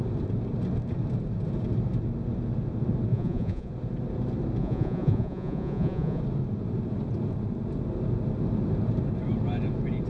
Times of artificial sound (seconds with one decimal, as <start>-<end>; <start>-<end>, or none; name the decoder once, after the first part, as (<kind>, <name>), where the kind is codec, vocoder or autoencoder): 3.1-3.7 (vocoder, Vocos); 4.6-6.2